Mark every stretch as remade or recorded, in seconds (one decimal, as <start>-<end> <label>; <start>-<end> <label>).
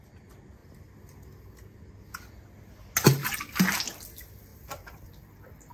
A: 0.0-4.5 recorded; 4.5-5.1 remade; 5.1-5.7 recorded